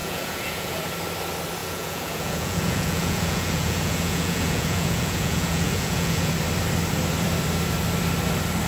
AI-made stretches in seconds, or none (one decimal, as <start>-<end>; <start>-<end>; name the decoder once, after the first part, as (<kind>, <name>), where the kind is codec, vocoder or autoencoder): 0.0-0.8 (vocoder, Vocos); 1.6-6.3

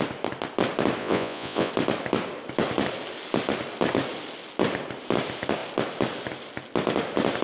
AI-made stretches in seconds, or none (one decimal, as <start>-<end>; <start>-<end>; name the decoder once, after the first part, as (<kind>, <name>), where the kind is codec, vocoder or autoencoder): 1.0-1.7 (vocoder, Vocos)

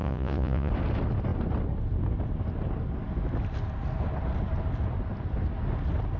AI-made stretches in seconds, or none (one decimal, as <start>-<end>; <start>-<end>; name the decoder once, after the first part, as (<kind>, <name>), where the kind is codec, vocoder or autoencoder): 0.0-0.7 (vocoder, Vocos)

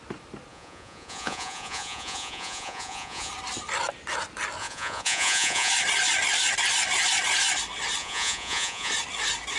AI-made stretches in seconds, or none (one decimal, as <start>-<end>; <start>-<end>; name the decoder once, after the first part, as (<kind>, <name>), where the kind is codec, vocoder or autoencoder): 0.5-3.3 (vocoder, Vocos); 4.6-5.7; 8.0-8.9

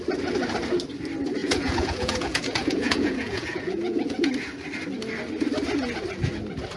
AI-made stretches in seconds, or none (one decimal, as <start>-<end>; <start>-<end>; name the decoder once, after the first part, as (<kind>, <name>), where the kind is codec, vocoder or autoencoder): 1.4-4.3 (vocoder, Vocos)

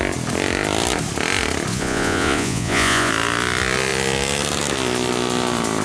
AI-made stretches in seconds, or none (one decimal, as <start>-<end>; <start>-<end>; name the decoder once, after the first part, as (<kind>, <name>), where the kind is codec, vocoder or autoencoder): 1.7-3.1 (vocoder, Vocos)

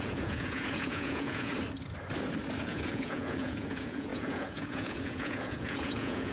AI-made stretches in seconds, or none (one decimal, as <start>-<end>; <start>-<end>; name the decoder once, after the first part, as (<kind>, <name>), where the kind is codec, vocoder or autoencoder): 0.0-1.5 (vocoder, Vocos); 2.6-6.3

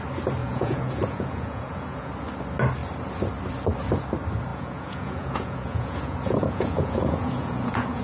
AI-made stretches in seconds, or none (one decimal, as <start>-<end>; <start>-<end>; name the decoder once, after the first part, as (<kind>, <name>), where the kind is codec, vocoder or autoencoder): 0.4-2.1 (vocoder, Vocos); 4.5-8.0